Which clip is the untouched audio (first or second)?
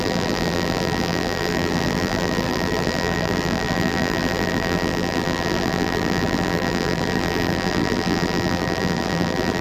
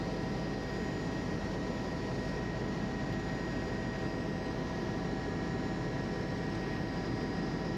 second